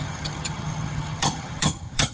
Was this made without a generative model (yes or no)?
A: no